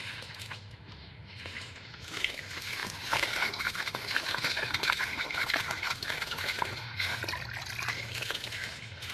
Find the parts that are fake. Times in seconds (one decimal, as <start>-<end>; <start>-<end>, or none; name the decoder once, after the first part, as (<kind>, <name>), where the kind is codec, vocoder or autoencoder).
0.0-7.2 (autoencoder, DAC-VAE); 7.9-9.1